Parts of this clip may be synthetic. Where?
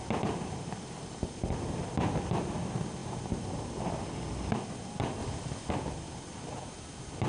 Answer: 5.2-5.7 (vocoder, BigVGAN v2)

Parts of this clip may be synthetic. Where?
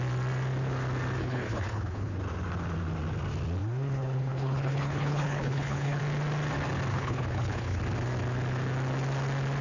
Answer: 1.2-2.2 (codec, HILCodec); 3.6-6.0; 6.9-7.8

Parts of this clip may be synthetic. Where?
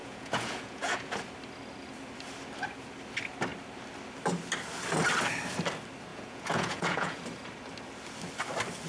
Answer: 0.0-1.2 (vocoder, Vocos); 6.1-7.2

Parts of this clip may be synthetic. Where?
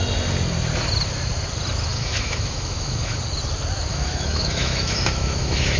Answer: 1.9-3.2 (autoencoder, DAC-VAE); 3.9-5.8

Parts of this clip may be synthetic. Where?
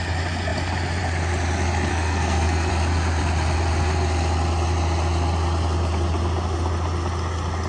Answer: 1.9-2.7 (codec, SNAC)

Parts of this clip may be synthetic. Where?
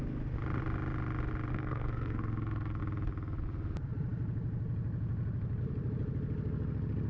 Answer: 1.5-2.8 (codec, SNAC)